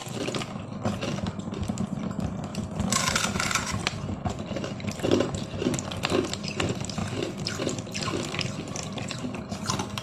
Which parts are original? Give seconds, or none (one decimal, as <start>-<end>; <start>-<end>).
0.0-3.8; 5.4-7.0; 9.4-10.0